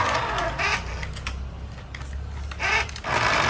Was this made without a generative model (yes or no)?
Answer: yes